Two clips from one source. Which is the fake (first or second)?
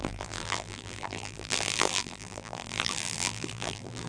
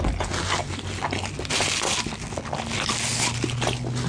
first